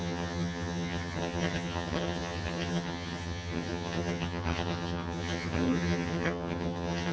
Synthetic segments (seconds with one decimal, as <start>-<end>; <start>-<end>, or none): 0.0-7.1